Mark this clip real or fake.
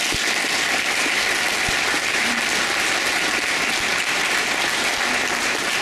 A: fake